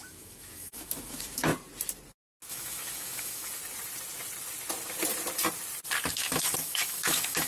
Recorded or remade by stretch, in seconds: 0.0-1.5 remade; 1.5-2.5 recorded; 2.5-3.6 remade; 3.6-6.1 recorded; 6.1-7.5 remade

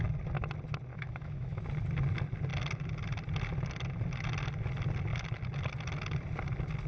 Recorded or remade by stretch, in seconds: 0.0-0.9 recorded; 0.9-1.6 remade; 1.6-6.9 recorded

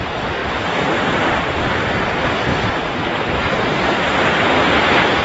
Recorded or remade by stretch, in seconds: 0.0-0.4 recorded; 0.4-1.6 remade; 1.6-2.5 recorded; 2.5-4.1 remade; 4.1-5.2 recorded

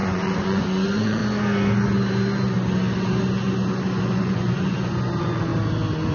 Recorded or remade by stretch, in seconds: 0.0-1.2 remade; 1.2-4.0 recorded; 4.0-5.5 remade; 5.5-6.1 recorded

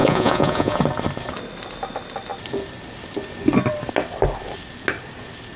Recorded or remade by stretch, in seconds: 0.0-0.8 remade; 0.8-5.6 recorded

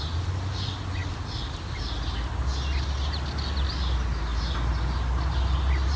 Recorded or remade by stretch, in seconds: 0.0-6.0 recorded

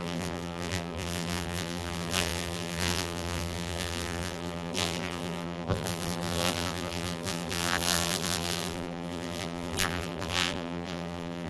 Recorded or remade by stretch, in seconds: 0.0-11.5 remade